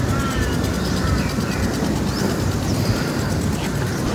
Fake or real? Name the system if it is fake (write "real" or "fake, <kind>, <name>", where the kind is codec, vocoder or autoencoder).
real